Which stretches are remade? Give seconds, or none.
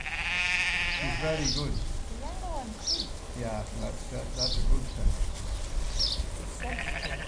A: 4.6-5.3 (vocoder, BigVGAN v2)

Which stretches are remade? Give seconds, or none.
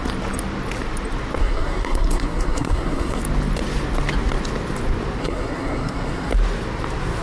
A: 1.4-3.2 (codec, SNAC); 5.2-6.3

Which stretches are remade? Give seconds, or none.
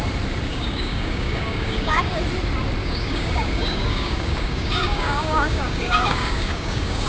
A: 0.5-2.2 (codec, DAC); 2.8-7.1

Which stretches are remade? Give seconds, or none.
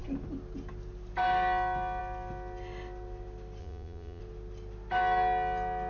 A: 3.6-4.2 (vocoder, Vocos)